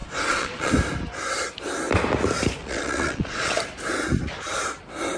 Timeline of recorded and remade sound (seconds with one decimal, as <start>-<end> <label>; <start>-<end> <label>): 0.0-0.7 remade; 0.7-2.6 recorded; 2.6-3.6 remade; 3.6-5.2 recorded